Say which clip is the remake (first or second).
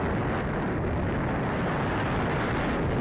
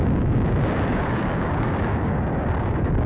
second